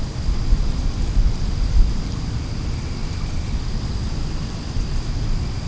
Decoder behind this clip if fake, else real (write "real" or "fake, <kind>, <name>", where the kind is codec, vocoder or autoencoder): real